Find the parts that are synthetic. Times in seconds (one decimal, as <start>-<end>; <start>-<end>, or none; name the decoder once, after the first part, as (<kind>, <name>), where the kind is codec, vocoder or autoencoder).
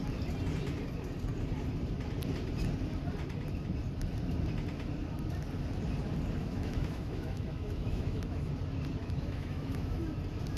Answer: 6.4-8.5 (autoencoder, DAC-VAE); 9.0-10.0